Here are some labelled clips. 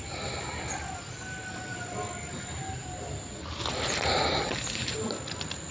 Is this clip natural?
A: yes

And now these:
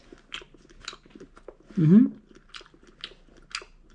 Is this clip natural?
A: yes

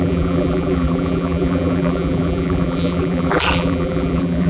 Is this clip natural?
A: no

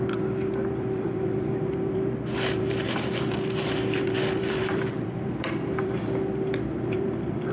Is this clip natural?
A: no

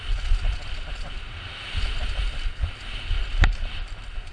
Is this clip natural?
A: no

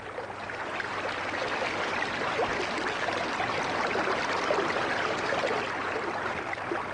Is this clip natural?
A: yes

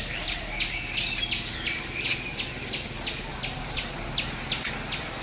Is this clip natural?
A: yes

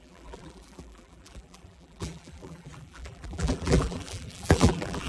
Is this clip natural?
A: no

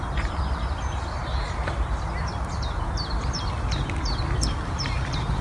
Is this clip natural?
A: yes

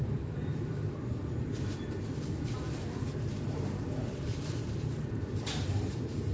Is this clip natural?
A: no